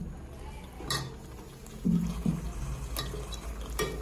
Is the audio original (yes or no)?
yes